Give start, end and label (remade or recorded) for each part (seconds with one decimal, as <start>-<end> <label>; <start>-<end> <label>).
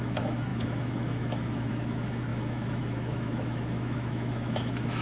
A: 0.0-5.0 remade